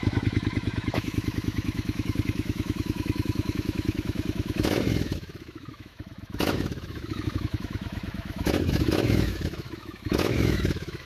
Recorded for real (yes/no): no